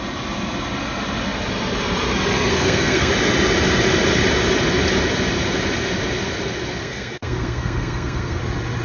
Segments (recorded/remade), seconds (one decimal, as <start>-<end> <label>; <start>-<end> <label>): 0.0-2.5 recorded; 2.5-3.1 remade; 3.1-6.8 recorded; 6.8-8.4 remade; 8.4-8.8 recorded